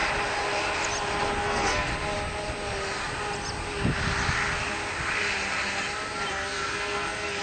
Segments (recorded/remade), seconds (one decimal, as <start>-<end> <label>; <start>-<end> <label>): 0.0-1.4 recorded; 1.4-1.9 remade; 1.9-6.3 recorded; 6.3-7.4 remade